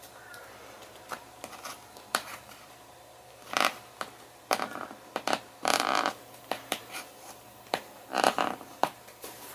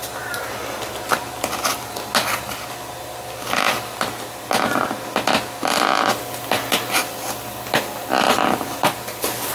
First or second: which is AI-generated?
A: first